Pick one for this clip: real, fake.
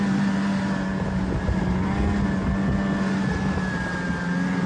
real